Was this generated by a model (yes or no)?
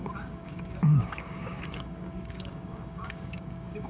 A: yes